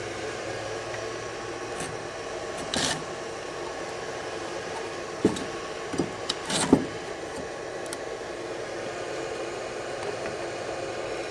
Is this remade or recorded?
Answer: recorded